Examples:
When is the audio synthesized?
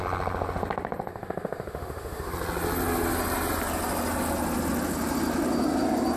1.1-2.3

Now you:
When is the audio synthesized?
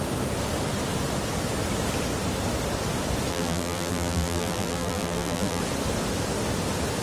3.3-5.6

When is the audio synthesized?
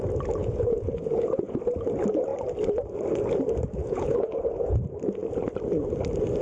0.4-1.6; 3.8-4.8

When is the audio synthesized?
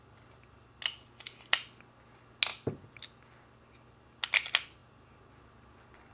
none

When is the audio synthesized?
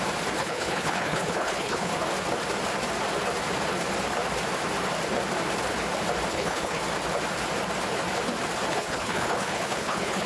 0.4-1.9; 6.3-6.8; 8.7-10.3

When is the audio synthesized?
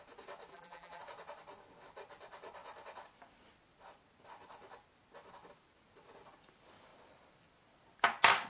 0.5-1.0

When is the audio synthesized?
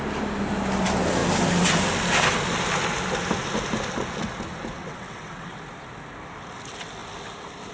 4.8-5.6